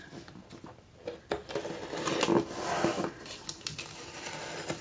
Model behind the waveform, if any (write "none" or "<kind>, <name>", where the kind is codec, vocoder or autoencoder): none